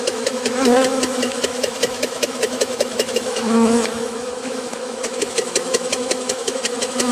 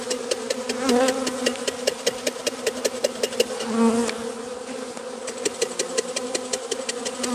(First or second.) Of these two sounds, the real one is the second